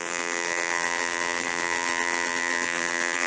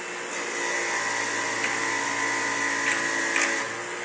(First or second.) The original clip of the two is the second